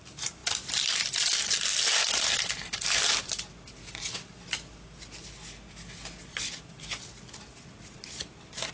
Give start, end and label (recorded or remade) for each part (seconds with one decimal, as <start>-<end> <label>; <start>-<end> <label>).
0.0-8.7 recorded